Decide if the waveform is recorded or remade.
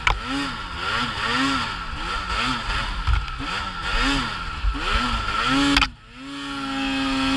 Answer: recorded